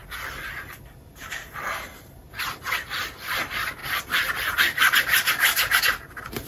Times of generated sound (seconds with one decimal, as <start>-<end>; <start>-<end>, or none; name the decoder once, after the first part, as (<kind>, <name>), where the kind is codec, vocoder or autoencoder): 3.8-5.8 (vocoder, BigVGAN v2)